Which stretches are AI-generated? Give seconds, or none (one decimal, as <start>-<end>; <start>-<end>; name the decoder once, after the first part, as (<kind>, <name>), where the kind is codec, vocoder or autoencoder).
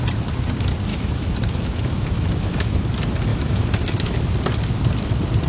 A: 0.9-2.8 (autoencoder, DAC-VAE); 3.3-4.2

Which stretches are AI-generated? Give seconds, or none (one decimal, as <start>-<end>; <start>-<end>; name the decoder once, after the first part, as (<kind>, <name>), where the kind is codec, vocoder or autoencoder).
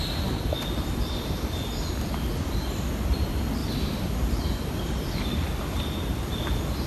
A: 3.6-4.6 (vocoder, BigVGAN v2)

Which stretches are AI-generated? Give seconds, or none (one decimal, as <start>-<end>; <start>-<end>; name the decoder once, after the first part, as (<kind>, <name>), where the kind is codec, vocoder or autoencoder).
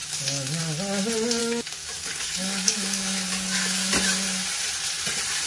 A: 0.0-0.6 (codec, DAC); 1.4-3.9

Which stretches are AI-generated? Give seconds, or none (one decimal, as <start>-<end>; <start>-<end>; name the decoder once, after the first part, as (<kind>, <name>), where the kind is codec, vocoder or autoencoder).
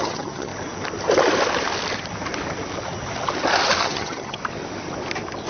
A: 0.0-0.5 (vocoder, HiFi-GAN); 3.8-4.4